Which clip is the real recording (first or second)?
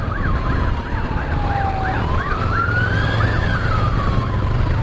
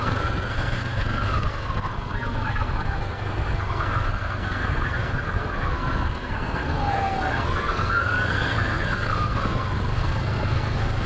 first